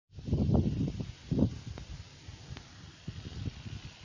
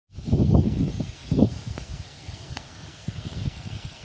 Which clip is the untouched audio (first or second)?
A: first